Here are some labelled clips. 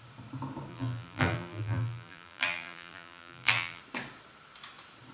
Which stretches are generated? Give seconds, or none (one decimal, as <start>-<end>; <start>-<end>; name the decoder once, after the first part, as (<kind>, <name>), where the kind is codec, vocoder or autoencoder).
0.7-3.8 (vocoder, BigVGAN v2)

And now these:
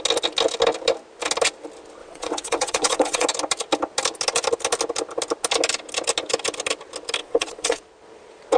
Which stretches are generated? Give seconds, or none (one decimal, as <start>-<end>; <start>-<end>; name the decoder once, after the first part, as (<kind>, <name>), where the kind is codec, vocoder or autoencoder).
2.0-3.3 (vocoder, WaveNeXt); 7.2-7.8

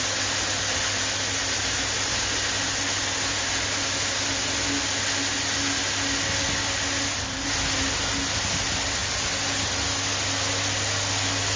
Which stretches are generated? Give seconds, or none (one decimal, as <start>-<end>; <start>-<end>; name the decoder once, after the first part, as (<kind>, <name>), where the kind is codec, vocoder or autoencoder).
none